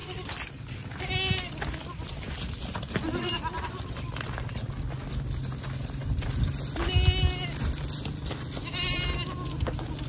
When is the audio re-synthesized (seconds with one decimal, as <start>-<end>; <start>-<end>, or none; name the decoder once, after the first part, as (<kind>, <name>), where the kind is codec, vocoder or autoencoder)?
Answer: none